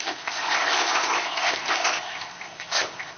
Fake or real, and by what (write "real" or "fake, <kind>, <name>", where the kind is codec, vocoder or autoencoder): fake, codec, ZipCodec